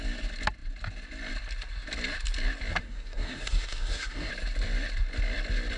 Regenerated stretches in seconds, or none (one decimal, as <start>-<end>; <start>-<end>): 2.7-4.3